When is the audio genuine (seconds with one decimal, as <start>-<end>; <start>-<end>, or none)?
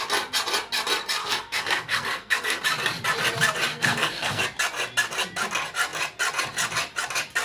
0.0-1.2; 2.6-3.7; 4.4-7.4